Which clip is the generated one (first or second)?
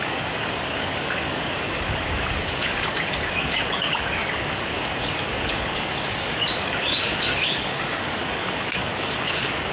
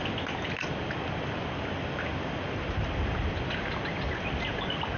first